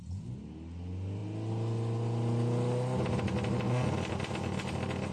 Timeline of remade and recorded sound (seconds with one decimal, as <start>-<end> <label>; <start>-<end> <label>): 0.0-5.1 recorded